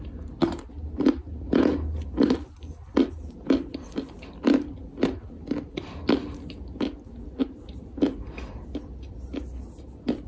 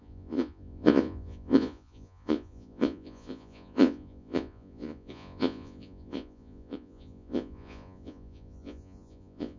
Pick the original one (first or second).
first